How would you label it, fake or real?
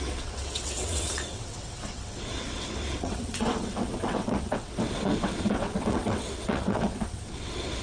fake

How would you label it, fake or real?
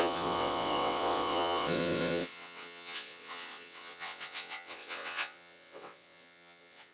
fake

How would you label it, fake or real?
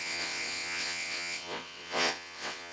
fake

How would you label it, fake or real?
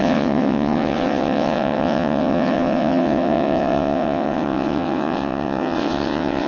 fake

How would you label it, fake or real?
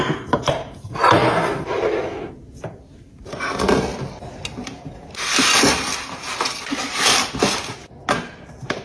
real